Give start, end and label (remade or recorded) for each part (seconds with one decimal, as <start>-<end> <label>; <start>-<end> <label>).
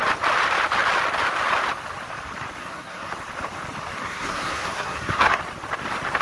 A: 0.0-2.6 recorded; 2.6-3.1 remade; 3.1-4.0 recorded; 4.0-5.4 remade; 5.4-6.2 recorded